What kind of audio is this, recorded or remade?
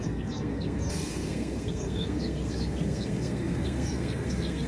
remade